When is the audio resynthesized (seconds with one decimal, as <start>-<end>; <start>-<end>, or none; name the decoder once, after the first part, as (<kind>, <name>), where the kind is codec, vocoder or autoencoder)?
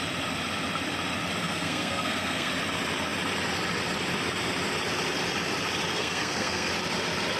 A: 1.4-2.5 (codec, SNAC); 5.9-6.7